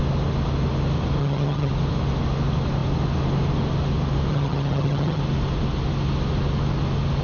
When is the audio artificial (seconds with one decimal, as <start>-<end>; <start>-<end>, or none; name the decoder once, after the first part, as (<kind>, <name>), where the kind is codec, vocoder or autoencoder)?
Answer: 1.2-1.7 (vocoder, HiFi-GAN); 4.3-5.2